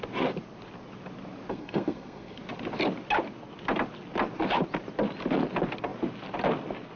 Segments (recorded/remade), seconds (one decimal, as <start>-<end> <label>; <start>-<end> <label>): 0.0-1.5 recorded; 1.5-2.4 remade; 2.4-7.0 recorded